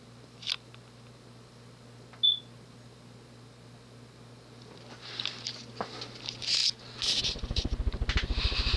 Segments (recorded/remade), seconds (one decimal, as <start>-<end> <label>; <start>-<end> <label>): 0.0-8.8 recorded